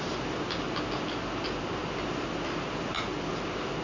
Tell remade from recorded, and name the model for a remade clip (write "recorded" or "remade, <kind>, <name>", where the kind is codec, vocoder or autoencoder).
recorded